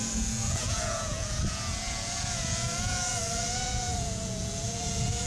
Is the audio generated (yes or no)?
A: yes